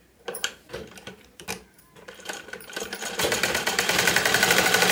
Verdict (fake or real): fake